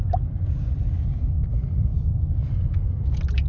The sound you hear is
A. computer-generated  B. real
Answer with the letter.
B